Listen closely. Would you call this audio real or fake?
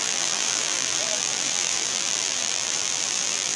fake